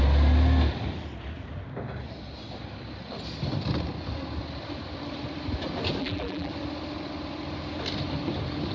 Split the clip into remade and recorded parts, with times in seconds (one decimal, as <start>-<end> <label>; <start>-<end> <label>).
0.0-6.0 recorded; 6.0-6.5 remade; 6.5-8.7 recorded